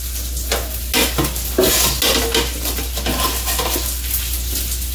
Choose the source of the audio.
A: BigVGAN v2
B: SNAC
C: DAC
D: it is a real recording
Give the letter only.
D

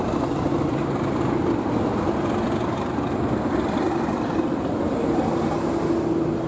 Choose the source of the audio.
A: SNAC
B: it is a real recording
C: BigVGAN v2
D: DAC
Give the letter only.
B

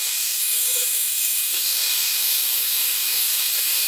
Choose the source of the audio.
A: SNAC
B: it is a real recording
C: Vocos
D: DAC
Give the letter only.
D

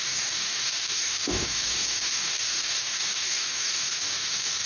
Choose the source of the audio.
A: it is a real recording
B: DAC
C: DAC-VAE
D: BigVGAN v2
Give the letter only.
B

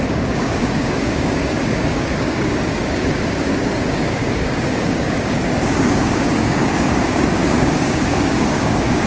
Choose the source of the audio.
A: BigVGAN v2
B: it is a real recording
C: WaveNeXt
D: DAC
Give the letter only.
D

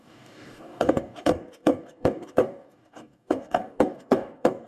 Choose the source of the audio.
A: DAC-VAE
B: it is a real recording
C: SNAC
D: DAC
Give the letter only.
D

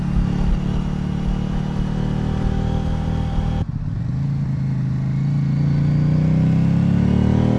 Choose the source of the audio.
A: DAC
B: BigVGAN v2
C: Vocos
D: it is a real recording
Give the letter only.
D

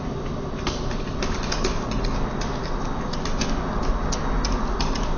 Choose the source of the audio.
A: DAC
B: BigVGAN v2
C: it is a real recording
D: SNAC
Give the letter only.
C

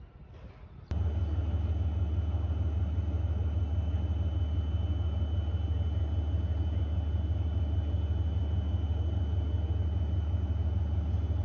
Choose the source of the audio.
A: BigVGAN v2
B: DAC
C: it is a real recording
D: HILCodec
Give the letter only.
C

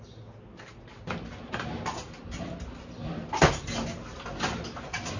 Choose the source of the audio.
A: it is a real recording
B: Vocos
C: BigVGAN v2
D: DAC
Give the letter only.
A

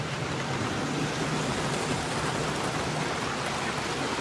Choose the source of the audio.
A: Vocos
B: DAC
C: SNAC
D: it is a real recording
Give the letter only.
D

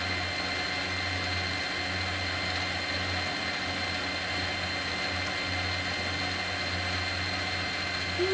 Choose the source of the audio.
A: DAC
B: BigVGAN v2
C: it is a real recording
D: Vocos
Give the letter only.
C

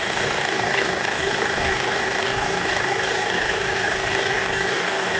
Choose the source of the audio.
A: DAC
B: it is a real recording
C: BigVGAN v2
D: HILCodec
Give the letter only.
A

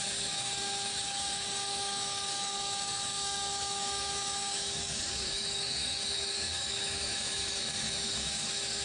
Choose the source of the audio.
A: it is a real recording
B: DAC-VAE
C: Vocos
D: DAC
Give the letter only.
D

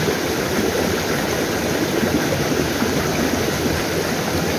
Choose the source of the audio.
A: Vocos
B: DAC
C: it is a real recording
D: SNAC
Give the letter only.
C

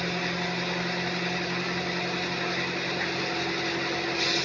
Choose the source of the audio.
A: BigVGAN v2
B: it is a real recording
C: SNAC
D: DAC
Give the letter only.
B